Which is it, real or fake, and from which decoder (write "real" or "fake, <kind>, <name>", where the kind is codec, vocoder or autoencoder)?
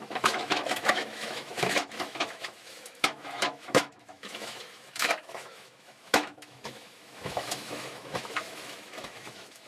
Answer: fake, autoencoder, DAC-VAE